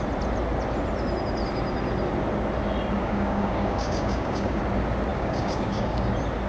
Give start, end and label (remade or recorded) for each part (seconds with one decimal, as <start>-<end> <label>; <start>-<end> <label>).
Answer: 0.0-3.0 recorded; 3.0-4.6 remade; 4.6-5.1 recorded; 5.1-6.1 remade; 6.1-6.5 recorded